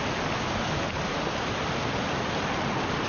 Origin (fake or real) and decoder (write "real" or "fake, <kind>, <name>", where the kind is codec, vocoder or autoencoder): real